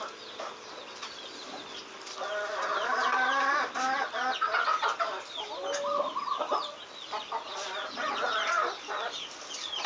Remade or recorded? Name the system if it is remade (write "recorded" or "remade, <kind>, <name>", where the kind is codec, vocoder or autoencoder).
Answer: recorded